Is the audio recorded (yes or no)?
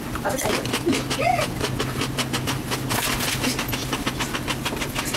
yes